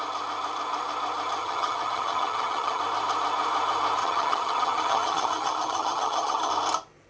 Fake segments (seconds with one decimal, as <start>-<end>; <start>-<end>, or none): 1.4-2.8; 4.0-6.5